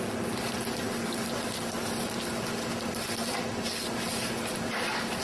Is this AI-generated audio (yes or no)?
no